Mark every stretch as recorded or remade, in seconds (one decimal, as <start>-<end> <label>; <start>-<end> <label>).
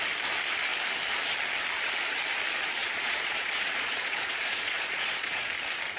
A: 0.0-2.8 recorded; 2.8-5.5 remade; 5.5-6.0 recorded